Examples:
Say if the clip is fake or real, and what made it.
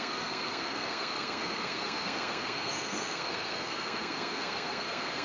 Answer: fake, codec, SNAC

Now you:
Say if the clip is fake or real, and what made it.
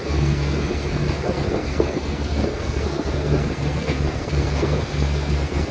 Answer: fake, codec, SNAC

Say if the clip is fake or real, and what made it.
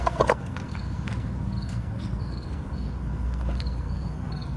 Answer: fake, codec, SNAC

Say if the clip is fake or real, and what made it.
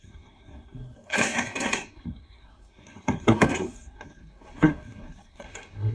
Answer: fake, codec, SNAC